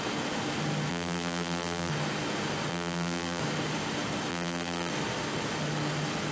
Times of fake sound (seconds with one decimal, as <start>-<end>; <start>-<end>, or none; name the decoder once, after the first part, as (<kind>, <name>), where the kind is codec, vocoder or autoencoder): 0.9-1.9 (vocoder, BigVGAN v2); 2.7-3.4; 4.3-4.9